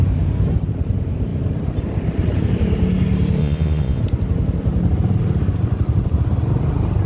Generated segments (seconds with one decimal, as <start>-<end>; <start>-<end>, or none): 3.4-4.0